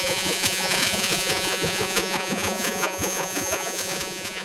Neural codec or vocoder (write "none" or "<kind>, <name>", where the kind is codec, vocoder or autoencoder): vocoder, Vocos